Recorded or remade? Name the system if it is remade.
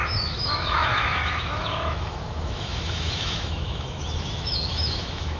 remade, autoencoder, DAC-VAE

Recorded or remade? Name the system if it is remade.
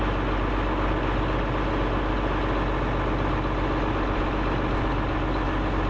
recorded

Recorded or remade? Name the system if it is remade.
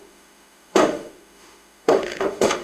remade, autoencoder, DAC-VAE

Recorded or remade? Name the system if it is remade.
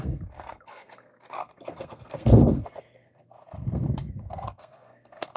remade, codec, SNAC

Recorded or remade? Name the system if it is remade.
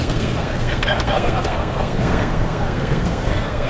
remade, codec, SNAC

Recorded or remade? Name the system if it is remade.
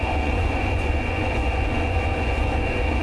remade, vocoder, Vocos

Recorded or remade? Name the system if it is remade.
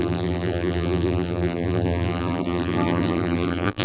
remade, vocoder, BigVGAN v2